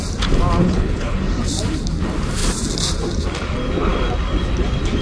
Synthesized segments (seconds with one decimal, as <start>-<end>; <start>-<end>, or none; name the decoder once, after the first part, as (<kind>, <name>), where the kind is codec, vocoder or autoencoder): 0.6-1.2 (codec, HILCodec)